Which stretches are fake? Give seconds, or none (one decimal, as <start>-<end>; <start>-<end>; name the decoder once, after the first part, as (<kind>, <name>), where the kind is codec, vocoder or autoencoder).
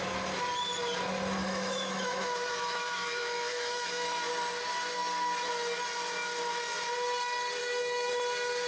1.4-4.2 (autoencoder, DAC-VAE); 7.6-8.1